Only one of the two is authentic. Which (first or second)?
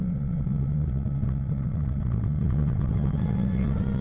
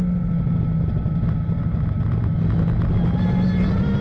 second